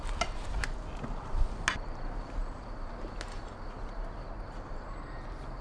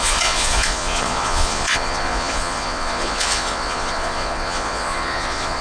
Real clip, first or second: first